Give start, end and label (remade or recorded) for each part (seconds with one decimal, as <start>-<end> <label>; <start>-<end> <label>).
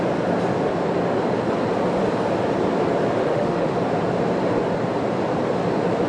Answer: 0.0-3.2 recorded; 3.2-3.8 remade; 3.8-6.1 recorded